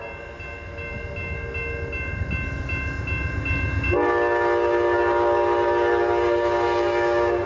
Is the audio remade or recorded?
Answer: recorded